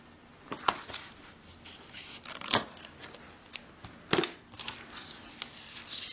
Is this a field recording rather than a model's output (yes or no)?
yes